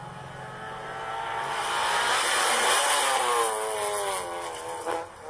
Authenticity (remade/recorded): recorded